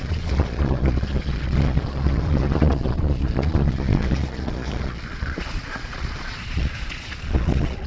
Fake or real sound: fake